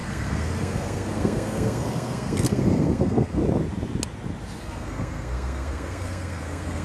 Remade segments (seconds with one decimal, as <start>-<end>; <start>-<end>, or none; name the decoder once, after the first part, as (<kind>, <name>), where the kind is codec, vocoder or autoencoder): 0.0-3.4 (codec, SNAC); 4.6-6.8

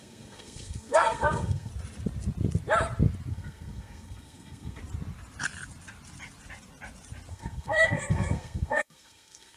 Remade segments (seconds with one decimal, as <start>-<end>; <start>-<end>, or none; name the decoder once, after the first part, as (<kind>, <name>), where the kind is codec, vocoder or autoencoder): 0.0-1.7 (codec, SNAC); 3.3-4.8; 7.3-9.6

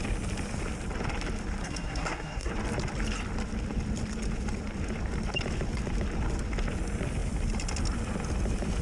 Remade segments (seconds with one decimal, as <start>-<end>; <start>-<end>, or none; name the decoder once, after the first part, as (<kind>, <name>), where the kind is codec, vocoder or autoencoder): 1.6-2.5 (codec, SNAC)